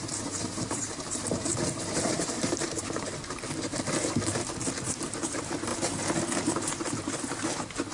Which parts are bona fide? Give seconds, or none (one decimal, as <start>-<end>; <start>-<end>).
5.7-6.4